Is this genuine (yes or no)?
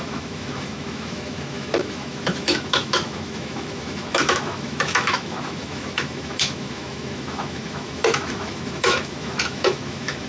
no